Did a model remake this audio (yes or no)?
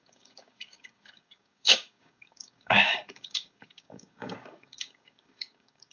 yes